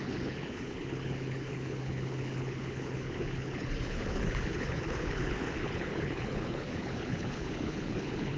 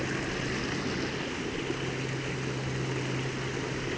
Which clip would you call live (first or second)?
second